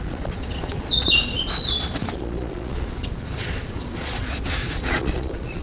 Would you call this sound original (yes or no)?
no